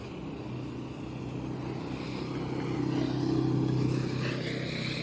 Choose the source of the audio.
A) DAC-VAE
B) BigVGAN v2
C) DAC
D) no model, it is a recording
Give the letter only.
D